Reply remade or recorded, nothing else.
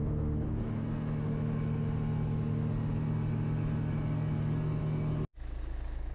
recorded